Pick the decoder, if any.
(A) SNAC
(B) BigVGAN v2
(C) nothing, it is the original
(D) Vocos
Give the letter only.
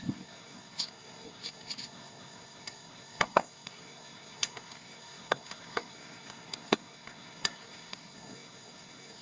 A